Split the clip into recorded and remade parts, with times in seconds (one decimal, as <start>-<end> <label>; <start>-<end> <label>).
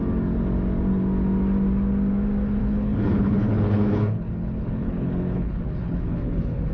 0.0-2.6 recorded; 2.6-6.7 remade